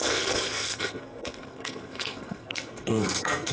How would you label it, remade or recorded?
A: remade